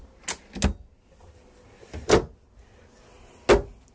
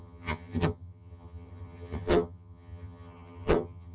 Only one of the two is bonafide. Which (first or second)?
first